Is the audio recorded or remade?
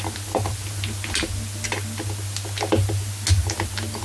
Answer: recorded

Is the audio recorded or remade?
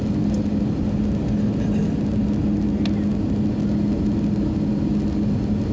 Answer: recorded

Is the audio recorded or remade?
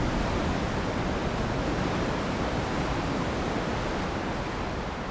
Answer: recorded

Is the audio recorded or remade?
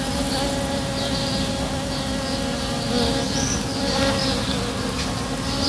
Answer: recorded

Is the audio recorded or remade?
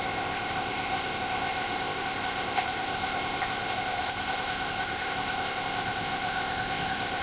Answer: remade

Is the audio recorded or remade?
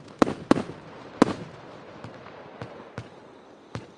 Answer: recorded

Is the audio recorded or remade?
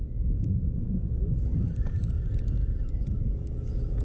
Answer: recorded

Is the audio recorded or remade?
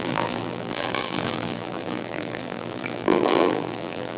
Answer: remade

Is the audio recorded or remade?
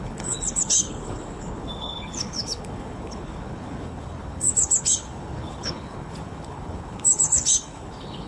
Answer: remade